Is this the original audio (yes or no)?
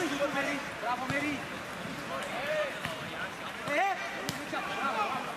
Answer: yes